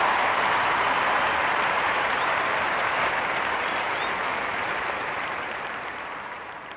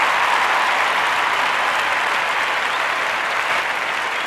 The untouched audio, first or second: second